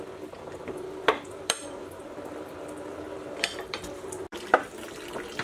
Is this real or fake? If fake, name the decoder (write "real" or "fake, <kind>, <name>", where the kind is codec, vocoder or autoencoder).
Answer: fake, vocoder, BigVGAN v2